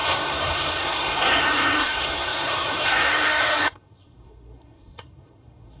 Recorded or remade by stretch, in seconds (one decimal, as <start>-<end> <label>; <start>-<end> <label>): 0.0-5.8 remade